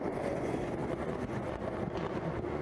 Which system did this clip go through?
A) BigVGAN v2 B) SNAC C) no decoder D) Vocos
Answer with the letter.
D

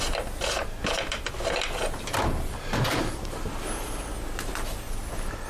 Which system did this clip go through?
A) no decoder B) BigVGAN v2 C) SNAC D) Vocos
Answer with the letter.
A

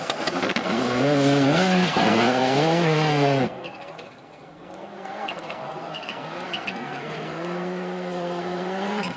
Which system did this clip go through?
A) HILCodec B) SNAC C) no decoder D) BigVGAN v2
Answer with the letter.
B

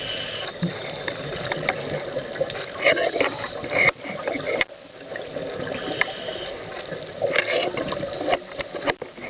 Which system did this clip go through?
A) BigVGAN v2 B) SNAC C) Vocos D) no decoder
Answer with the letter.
D